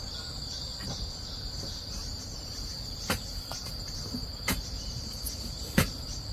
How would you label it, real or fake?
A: fake